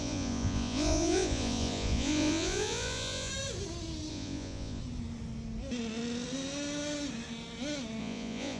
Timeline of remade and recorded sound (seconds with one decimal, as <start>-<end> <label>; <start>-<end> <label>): 0.0-3.3 remade; 3.3-4.1 recorded; 4.1-4.8 remade; 4.8-8.0 recorded; 8.0-8.6 remade